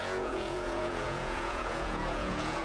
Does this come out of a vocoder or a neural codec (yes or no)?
yes